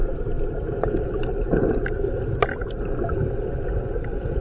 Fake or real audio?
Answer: real